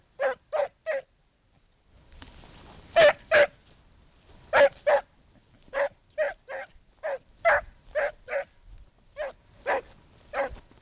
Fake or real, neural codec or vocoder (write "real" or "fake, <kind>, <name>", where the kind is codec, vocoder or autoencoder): real